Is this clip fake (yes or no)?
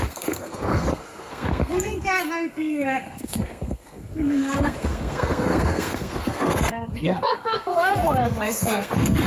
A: yes